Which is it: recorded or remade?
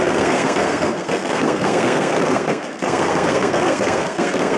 remade